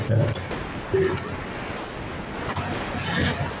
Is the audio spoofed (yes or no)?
no